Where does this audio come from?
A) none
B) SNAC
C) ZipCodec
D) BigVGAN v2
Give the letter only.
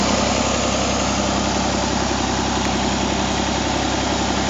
A